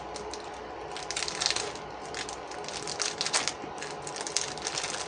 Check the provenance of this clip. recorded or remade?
recorded